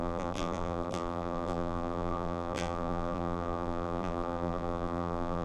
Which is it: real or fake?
fake